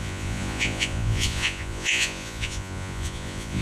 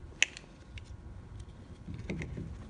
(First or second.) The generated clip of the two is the first